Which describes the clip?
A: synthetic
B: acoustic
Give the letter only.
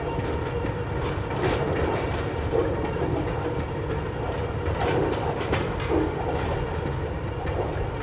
B